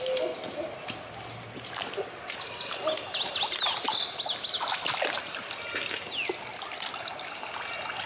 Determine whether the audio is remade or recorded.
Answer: recorded